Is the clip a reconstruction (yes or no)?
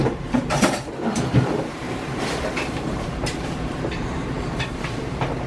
yes